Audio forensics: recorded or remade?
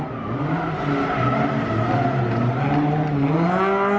recorded